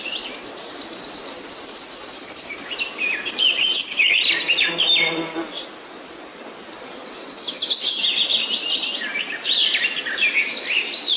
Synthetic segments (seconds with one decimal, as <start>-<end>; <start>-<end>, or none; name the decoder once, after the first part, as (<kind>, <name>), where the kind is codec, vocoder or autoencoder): none